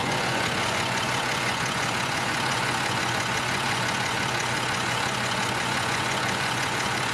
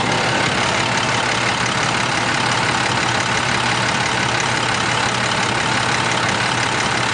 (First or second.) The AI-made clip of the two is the first